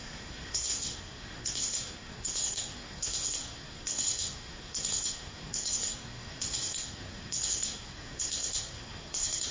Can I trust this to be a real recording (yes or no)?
no